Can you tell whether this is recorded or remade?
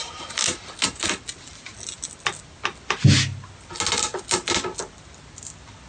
recorded